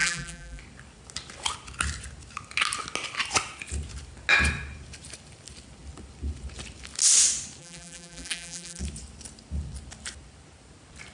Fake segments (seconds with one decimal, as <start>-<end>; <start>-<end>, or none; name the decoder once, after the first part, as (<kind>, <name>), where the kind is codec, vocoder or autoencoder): 0.0-0.6 (vocoder, BigVGAN v2); 7.6-8.8